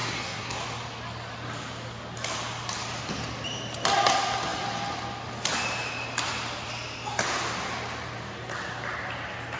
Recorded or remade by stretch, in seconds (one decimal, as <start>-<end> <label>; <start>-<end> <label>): 0.0-0.6 remade; 0.6-9.6 recorded